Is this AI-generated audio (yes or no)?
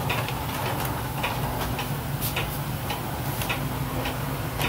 no